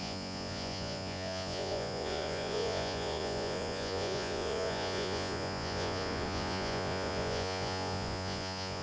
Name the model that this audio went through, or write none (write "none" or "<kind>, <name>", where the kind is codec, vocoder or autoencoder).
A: vocoder, Vocos